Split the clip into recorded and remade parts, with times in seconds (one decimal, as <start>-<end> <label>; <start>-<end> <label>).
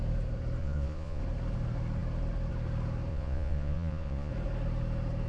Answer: 0.0-0.6 recorded; 0.6-1.2 remade; 1.2-3.1 recorded; 3.1-4.3 remade; 4.3-5.3 recorded